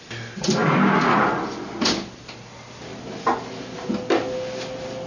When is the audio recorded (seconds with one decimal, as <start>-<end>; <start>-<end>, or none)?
0.0-5.1